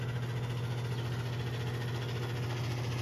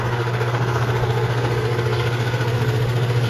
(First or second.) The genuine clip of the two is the first